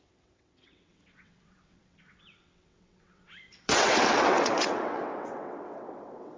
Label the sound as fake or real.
fake